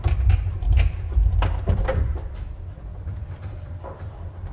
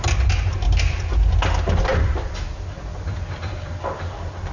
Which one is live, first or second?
second